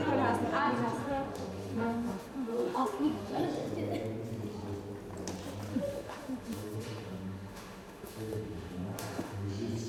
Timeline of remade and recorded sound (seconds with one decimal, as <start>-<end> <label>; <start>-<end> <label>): 0.0-1.0 recorded; 1.0-3.4 remade; 3.4-5.7 recorded; 5.7-9.5 remade; 9.5-9.9 recorded